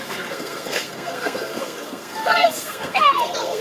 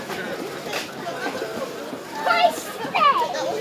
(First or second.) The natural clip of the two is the second